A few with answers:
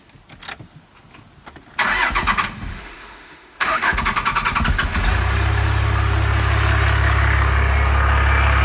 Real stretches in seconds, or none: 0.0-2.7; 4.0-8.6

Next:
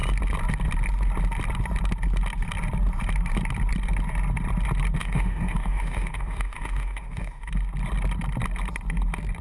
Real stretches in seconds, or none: 0.0-5.0; 7.5-9.4

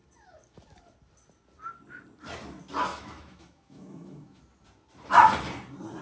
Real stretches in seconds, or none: 0.0-2.9; 4.4-6.0

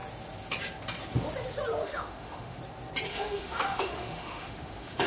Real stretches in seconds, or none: 0.0-1.8; 2.6-3.1

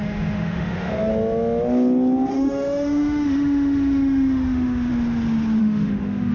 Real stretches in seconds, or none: 1.1-2.3; 4.9-5.6

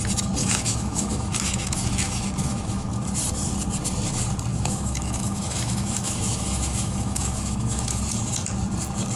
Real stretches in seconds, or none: 0.0-0.4; 2.9-4.5; 8.0-9.2

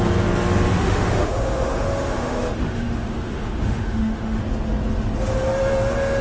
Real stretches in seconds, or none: 0.0-0.7; 4.4-6.2

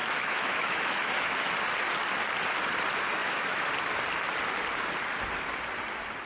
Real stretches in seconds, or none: 1.5-3.2; 3.7-6.3